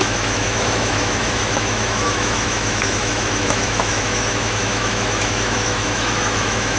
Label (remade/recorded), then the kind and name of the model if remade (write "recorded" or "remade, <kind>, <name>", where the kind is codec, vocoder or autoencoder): remade, autoencoder, DAC-VAE